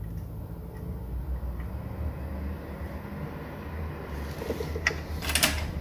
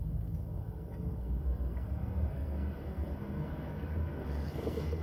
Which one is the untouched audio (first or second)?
first